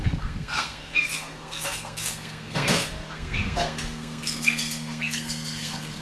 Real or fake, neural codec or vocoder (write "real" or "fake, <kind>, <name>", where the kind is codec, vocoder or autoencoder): fake, codec, SNAC